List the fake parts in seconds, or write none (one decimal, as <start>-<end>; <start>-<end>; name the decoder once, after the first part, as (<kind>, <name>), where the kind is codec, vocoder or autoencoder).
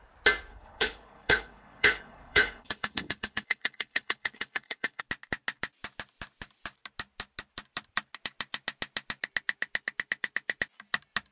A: 0.5-5.0 (codec, HILCodec)